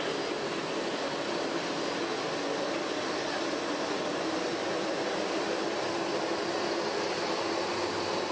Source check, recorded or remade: recorded